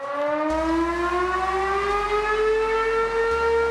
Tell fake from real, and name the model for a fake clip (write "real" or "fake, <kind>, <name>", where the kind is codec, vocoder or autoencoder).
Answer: real